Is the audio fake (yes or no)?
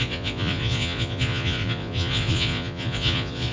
yes